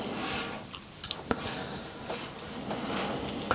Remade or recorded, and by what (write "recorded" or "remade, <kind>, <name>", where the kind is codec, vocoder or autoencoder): recorded